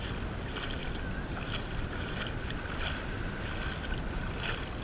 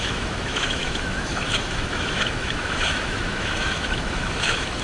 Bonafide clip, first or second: first